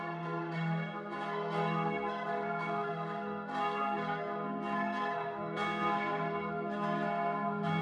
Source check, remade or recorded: remade